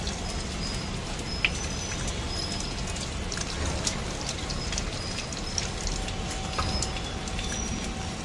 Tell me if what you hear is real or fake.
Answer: real